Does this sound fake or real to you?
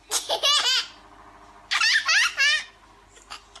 real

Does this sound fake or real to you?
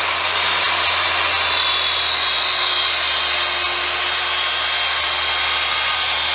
real